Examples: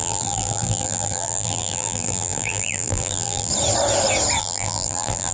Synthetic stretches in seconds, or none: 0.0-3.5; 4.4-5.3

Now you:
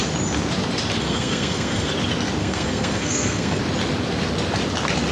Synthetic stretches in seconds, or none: 1.0-1.9; 2.4-3.6

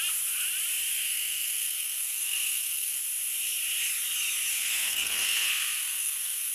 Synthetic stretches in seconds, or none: 0.9-3.0; 4.5-6.5

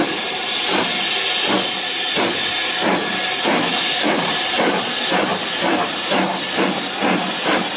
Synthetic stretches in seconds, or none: 0.0-0.9; 3.9-5.3